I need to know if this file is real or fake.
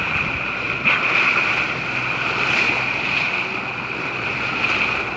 real